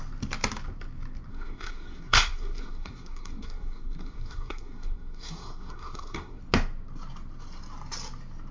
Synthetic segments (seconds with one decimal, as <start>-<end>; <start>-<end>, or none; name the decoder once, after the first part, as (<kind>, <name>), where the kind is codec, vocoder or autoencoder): 1.3-6.4 (codec, SNAC)